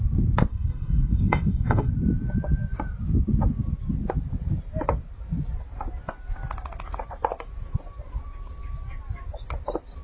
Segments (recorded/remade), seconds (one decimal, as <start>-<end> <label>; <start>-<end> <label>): 0.0-0.5 recorded; 0.5-1.9 remade; 1.9-10.0 recorded